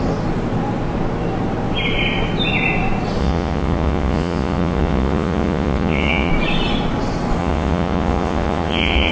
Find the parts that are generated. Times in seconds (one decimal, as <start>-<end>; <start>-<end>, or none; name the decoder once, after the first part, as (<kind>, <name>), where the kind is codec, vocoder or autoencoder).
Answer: 3.2-6.3 (vocoder, Vocos); 7.4-9.1